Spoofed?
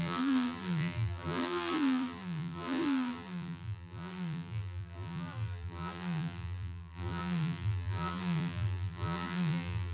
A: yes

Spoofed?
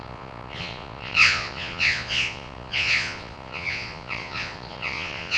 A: yes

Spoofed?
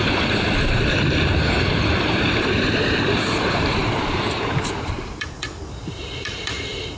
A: yes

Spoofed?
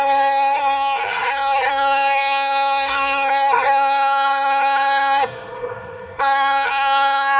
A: yes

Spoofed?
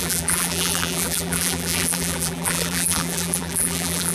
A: yes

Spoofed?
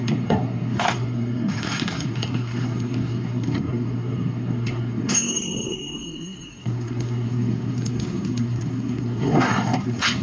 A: yes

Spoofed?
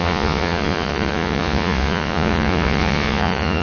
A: yes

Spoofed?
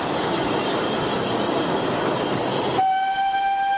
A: no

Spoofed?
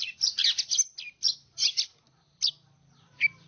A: no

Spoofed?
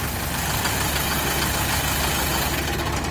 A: no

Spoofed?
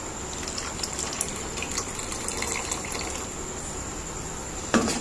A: no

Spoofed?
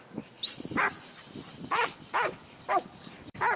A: yes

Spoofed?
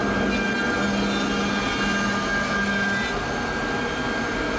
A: no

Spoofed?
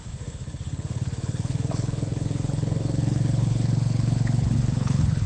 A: yes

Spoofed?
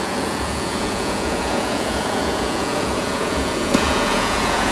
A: yes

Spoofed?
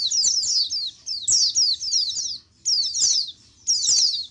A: no